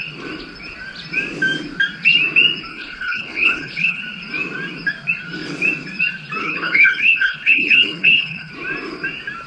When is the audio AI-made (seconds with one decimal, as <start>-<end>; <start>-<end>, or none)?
2.7-4.0; 6.4-8.5